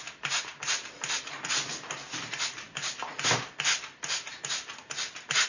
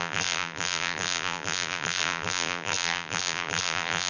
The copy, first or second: second